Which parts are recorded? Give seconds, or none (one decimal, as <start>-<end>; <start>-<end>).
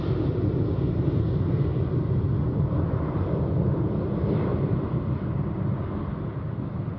0.0-7.0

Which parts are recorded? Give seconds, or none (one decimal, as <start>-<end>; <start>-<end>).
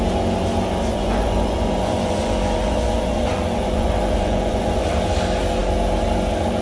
0.0-0.9; 4.9-6.6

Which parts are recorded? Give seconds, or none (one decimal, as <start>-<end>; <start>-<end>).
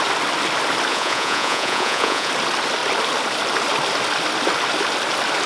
0.0-0.9; 2.3-5.5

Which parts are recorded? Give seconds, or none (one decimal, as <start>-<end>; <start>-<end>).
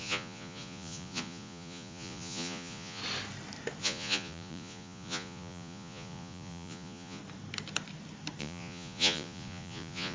3.0-3.8; 7.2-8.4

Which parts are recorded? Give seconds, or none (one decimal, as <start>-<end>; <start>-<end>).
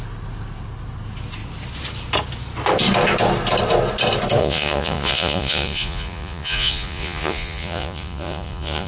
0.0-4.4